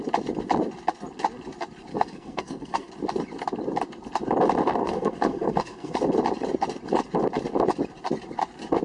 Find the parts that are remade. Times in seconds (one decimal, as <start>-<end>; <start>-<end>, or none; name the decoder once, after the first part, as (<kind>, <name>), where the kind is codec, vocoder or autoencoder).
1.9-2.9 (codec, SNAC); 4.8-6.0